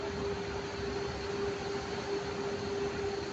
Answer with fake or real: real